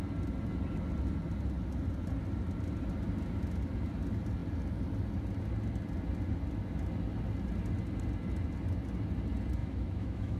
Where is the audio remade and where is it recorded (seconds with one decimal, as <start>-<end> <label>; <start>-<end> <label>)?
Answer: 0.0-9.6 recorded; 9.6-10.4 remade

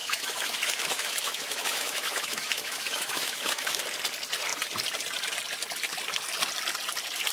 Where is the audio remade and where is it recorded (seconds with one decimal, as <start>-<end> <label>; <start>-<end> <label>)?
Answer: 0.0-3.8 remade; 3.8-7.3 recorded

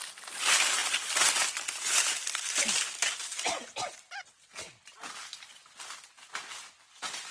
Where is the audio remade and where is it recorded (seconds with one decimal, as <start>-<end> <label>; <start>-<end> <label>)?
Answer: 0.0-7.3 recorded

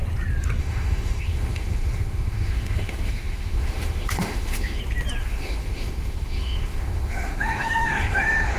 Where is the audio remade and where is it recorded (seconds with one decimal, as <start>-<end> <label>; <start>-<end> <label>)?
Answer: 0.0-0.6 recorded; 0.6-4.8 remade; 4.8-5.2 recorded; 5.2-8.6 remade

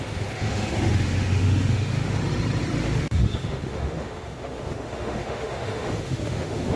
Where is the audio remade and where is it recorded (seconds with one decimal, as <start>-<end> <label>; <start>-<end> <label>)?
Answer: 0.0-2.2 remade; 2.2-2.8 recorded; 2.8-6.8 remade

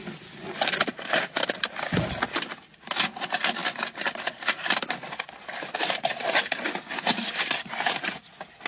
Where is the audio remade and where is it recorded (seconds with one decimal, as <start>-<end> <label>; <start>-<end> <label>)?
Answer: 0.0-8.7 recorded

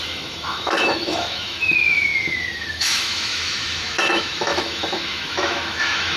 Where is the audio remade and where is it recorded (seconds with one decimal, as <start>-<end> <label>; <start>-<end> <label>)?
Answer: 0.0-2.1 remade; 2.1-2.7 recorded; 2.7-6.2 remade

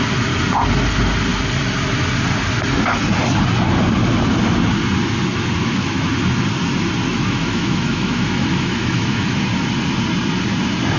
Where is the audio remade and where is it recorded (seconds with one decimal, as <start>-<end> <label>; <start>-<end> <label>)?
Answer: 0.0-5.6 recorded; 5.6-6.1 remade; 6.1-7.1 recorded; 7.1-9.4 remade; 9.4-11.0 recorded